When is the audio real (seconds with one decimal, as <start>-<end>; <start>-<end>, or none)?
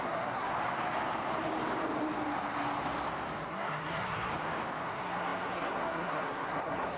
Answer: 0.5-3.5; 4.3-4.8